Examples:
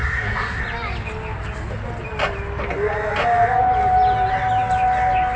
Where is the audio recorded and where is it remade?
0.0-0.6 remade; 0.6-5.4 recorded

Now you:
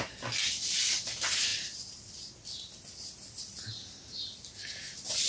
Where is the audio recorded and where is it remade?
0.0-5.3 recorded

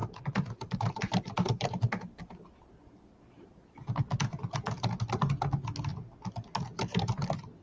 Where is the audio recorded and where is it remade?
0.0-7.6 recorded

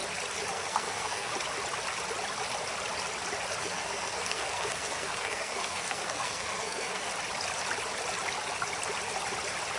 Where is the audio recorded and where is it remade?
0.0-0.5 recorded; 0.5-1.3 remade; 1.3-3.6 recorded; 3.6-7.1 remade; 7.1-9.8 recorded

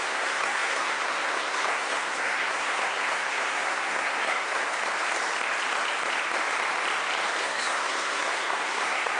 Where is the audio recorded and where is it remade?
0.0-4.7 remade; 4.7-7.4 recorded; 7.4-9.2 remade

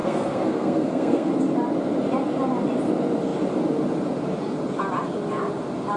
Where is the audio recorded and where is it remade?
0.0-1.3 remade; 1.3-6.0 recorded

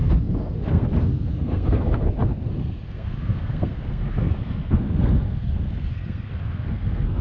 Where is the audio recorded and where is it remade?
0.0-7.2 remade

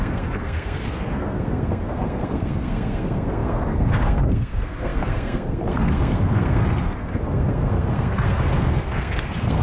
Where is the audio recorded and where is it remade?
0.0-9.6 remade